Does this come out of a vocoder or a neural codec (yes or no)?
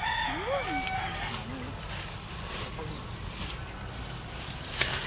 no